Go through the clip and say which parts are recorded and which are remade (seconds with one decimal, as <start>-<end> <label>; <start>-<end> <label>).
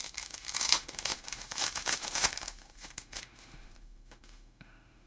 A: 0.0-5.1 remade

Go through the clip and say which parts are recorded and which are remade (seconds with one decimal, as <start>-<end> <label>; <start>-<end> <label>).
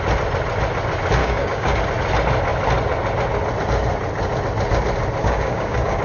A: 0.0-1.2 recorded; 1.2-1.8 remade; 1.8-5.2 recorded; 5.2-6.0 remade